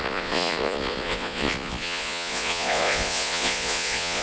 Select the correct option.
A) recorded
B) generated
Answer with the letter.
B